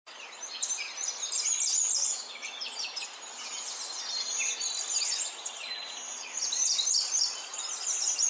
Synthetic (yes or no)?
no